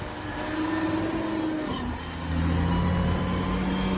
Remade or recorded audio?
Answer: recorded